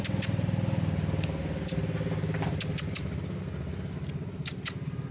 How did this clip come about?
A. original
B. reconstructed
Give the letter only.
A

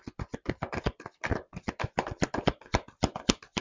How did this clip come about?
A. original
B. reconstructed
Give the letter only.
B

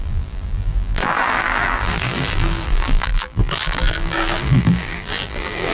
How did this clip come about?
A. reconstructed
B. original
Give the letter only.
A